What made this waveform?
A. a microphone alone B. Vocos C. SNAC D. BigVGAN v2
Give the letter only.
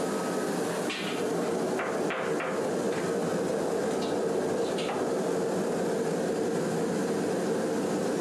A